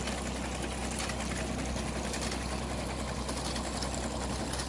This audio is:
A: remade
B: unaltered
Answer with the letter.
B